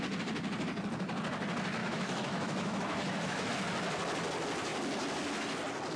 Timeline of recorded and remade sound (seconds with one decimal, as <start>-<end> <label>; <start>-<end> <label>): 0.0-1.8 recorded; 1.8-3.5 remade; 3.5-6.0 recorded